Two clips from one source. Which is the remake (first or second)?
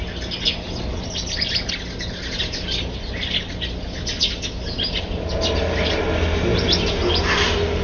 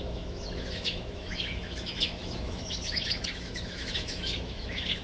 second